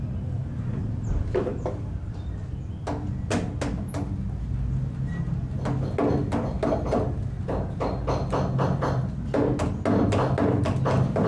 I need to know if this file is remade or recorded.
recorded